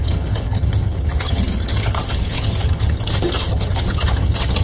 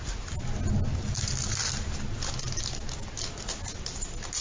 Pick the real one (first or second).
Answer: second